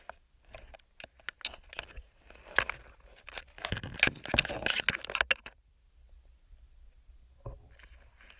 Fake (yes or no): no